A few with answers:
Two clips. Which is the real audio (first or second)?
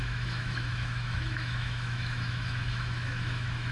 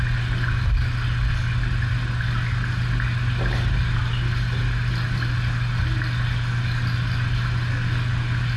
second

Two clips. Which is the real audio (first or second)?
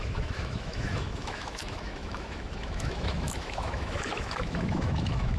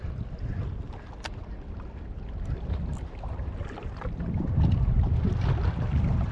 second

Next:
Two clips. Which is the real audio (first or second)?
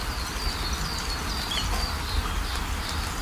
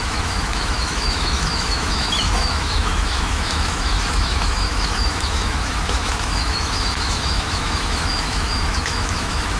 first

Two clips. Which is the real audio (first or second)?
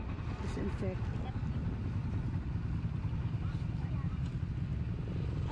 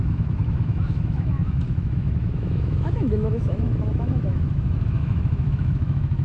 first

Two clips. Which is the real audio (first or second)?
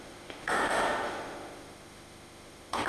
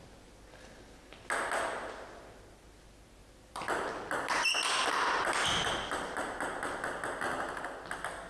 second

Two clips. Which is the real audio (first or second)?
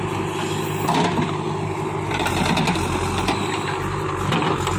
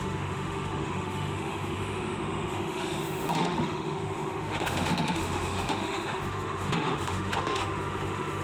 first